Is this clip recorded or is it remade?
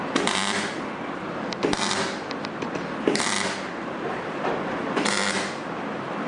remade